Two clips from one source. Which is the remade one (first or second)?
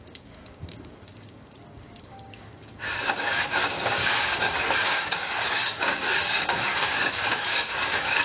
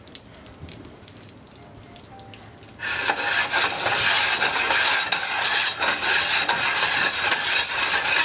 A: first